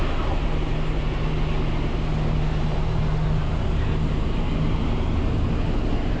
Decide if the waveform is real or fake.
real